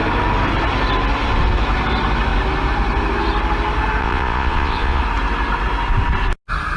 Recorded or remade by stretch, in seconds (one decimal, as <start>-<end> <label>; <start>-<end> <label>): 0.0-4.0 recorded; 4.0-5.0 remade; 5.0-6.8 recorded